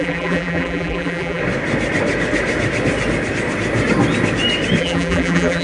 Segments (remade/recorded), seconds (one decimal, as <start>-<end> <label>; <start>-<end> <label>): 0.0-1.4 remade; 1.4-4.8 recorded; 4.8-5.6 remade